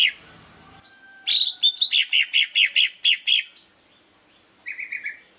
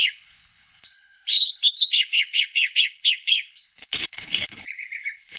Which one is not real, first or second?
second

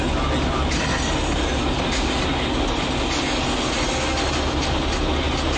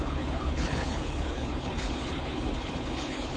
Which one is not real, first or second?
second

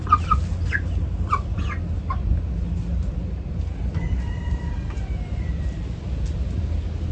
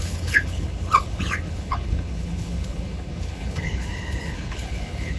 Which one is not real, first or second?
second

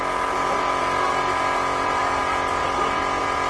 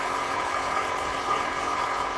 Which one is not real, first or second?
second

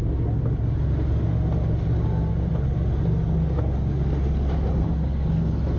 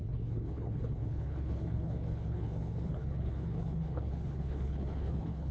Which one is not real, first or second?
second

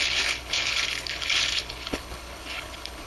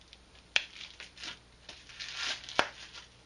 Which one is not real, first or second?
first